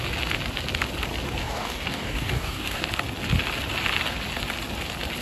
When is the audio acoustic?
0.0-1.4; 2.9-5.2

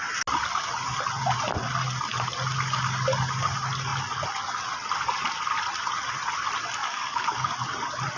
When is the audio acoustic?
0.0-6.8; 7.5-8.2

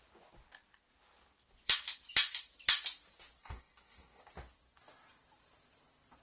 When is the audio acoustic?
0.0-3.4; 4.2-6.2

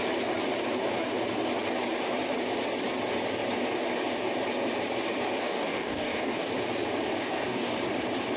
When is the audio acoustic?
0.0-5.4; 6.5-7.2; 7.7-8.4

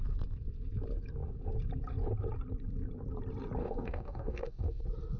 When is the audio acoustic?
0.0-3.6; 4.8-5.2

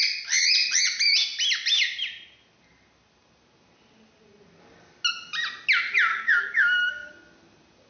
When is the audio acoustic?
0.0-6.1; 7.1-7.9

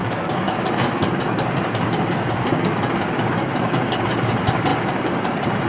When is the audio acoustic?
none